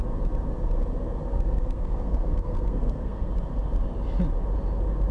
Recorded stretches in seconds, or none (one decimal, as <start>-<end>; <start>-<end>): 0.0-1.3; 3.3-5.1